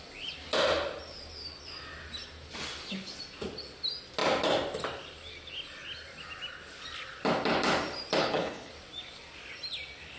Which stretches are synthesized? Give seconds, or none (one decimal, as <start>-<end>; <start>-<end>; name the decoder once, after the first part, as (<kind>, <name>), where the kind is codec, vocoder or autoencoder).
8.2-8.7 (codec, HILCodec)